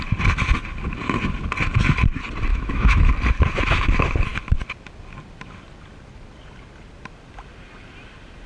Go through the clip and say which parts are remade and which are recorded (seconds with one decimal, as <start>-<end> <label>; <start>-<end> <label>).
0.0-2.5 recorded; 2.5-3.1 remade; 3.1-8.5 recorded